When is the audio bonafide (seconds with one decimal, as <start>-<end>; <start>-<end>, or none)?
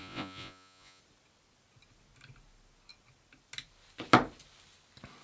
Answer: 1.0-5.2